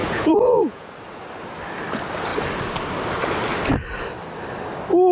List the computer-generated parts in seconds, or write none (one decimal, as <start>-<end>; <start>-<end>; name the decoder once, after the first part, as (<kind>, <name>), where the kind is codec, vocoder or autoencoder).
0.0-0.9 (vocoder, Vocos)